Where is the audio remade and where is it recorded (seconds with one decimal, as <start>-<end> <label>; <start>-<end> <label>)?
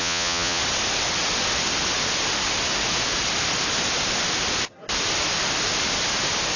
0.0-0.6 remade; 0.6-6.6 recorded